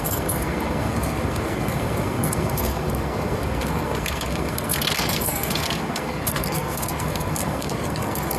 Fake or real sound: fake